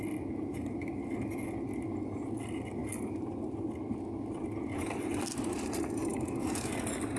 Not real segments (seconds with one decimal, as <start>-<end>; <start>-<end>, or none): 6.1-6.7